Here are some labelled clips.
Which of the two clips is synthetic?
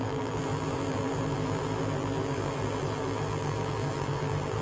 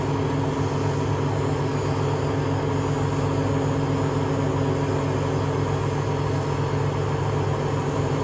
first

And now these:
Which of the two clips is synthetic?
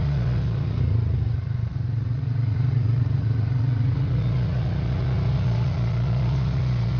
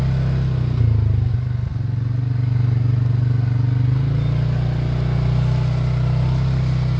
first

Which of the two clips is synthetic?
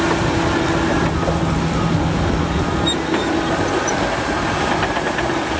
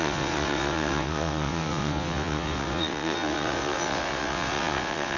second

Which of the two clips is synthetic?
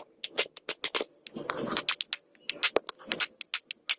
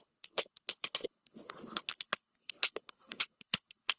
second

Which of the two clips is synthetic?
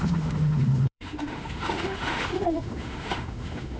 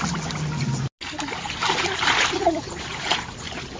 first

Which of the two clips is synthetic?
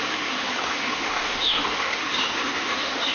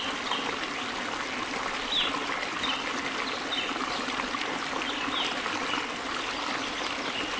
first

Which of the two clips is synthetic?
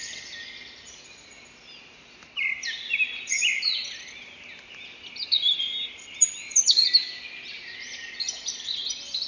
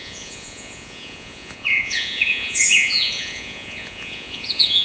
second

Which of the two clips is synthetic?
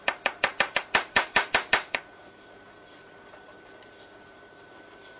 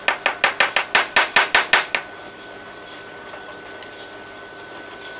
first